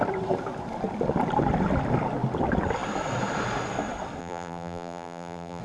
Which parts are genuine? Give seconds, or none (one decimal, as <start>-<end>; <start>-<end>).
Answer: 0.0-4.2